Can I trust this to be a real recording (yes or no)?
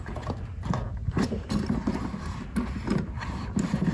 yes